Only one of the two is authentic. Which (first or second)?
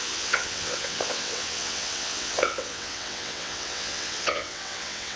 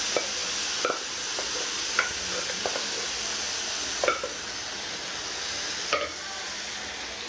second